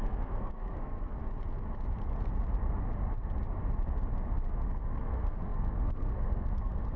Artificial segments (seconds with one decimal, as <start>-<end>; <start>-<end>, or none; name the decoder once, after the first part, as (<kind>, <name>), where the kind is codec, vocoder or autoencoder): 0.0-1.2 (codec, SNAC); 4.5-7.0